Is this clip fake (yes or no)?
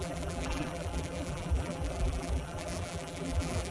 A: yes